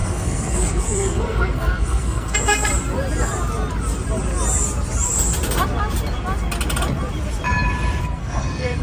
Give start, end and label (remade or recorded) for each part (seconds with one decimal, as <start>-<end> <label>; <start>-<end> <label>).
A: 0.0-2.7 remade; 2.7-8.0 recorded; 8.0-8.8 remade